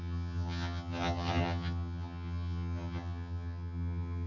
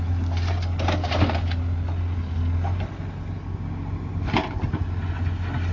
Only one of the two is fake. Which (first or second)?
first